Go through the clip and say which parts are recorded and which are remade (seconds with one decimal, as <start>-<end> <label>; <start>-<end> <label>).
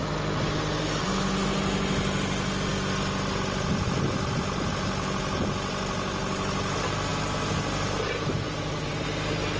0.0-9.6 recorded